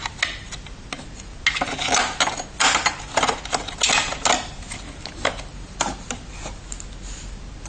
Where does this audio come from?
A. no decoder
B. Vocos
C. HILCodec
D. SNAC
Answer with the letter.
A